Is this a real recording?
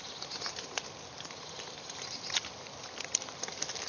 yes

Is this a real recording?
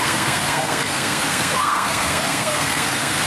no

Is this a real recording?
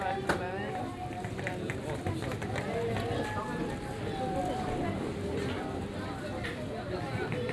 yes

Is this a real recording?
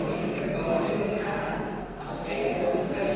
no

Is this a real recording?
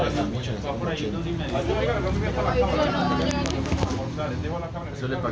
yes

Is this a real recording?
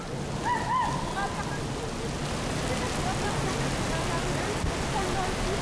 yes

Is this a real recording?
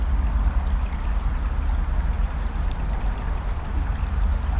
yes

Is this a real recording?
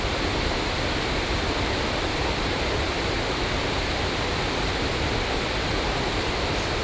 yes